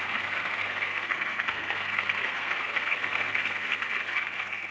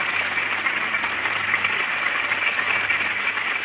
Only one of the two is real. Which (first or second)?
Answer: second